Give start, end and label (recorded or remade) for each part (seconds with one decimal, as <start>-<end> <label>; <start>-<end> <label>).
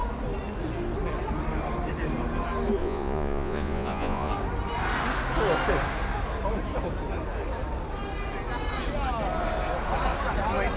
0.0-2.8 recorded; 2.8-4.3 remade; 4.3-10.8 recorded